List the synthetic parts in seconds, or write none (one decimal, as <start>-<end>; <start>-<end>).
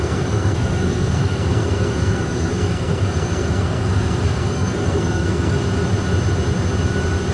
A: 0.0-5.6